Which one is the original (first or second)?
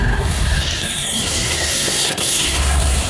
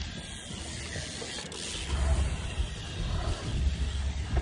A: second